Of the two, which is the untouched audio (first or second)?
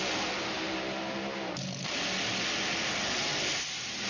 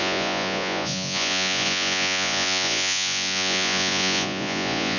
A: first